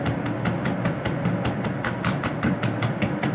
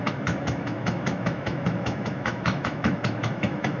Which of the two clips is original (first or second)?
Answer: first